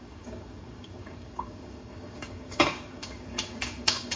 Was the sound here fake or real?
fake